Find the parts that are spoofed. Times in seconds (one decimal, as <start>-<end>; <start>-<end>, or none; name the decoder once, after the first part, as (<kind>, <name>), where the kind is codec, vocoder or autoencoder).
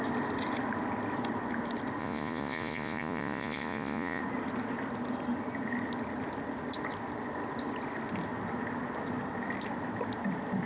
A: 2.0-4.2 (vocoder, Vocos)